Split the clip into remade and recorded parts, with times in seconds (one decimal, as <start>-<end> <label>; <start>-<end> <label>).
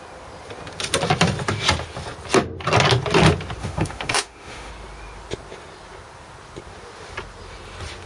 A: 0.0-3.6 recorded; 3.6-4.7 remade; 4.7-8.1 recorded